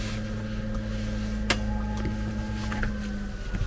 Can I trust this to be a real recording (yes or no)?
yes